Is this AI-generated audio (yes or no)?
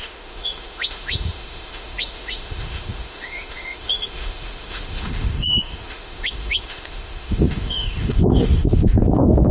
yes